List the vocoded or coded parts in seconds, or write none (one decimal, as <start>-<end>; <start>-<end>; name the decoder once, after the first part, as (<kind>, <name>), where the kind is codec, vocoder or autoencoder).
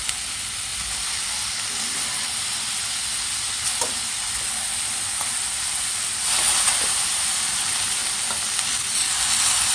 none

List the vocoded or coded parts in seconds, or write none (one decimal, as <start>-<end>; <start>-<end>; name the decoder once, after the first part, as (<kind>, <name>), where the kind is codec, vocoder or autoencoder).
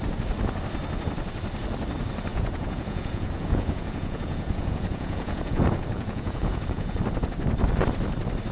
2.3-7.0 (vocoder, Vocos)